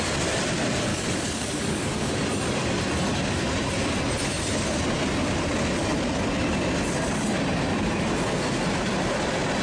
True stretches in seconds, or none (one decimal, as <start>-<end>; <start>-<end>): 0.0-0.9; 2.1-9.6